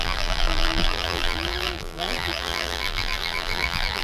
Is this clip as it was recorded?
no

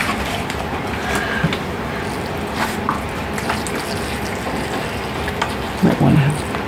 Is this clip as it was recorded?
yes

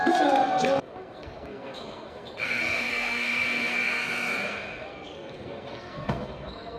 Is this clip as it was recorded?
no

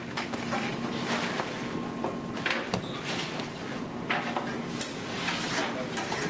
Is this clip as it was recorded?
yes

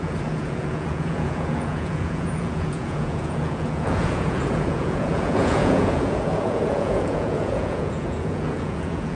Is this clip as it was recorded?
no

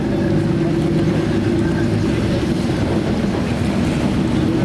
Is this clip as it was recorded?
yes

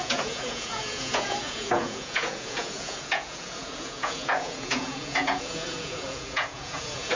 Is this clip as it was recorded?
no